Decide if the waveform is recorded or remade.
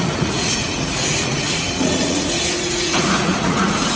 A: remade